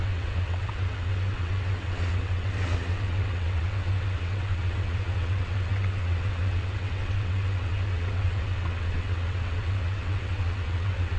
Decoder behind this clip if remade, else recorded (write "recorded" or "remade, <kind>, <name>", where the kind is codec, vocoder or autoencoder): remade, vocoder, WaveNeXt